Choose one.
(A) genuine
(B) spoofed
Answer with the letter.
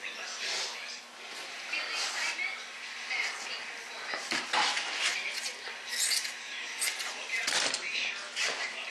A